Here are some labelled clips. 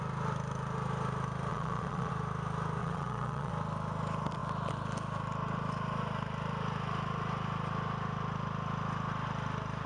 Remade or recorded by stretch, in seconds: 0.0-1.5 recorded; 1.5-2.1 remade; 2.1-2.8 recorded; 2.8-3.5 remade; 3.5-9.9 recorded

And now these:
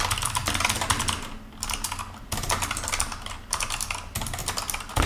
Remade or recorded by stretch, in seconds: 0.0-4.4 recorded; 4.4-5.1 remade

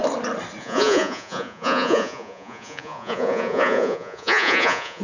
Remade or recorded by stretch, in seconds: 0.0-0.6 recorded; 0.6-5.0 remade

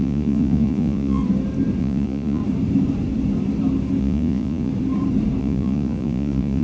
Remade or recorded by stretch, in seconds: 0.0-1.2 remade; 1.2-1.8 recorded; 1.8-2.4 remade; 2.4-4.0 recorded; 4.0-4.7 remade; 4.7-5.4 recorded; 5.4-6.6 remade

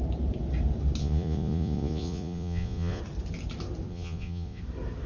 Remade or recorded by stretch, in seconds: 0.0-1.0 recorded; 1.0-3.0 remade; 3.0-3.9 recorded; 3.9-4.6 remade; 4.6-5.1 recorded